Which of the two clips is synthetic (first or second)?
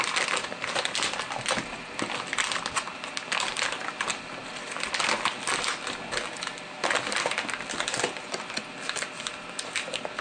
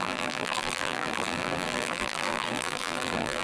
second